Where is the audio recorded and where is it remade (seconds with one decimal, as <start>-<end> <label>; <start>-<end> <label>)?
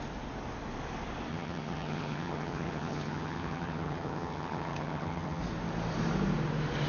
0.0-1.3 recorded; 1.3-5.4 remade; 5.4-6.9 recorded